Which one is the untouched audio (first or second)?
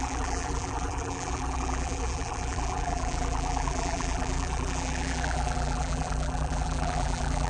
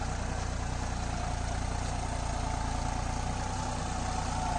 second